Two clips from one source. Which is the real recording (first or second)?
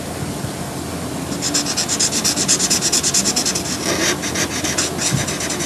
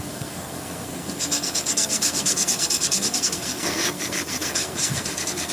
first